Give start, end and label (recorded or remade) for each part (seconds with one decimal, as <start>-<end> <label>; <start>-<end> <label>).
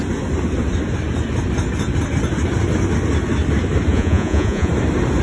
0.0-3.9 recorded; 3.9-4.7 remade; 4.7-5.2 recorded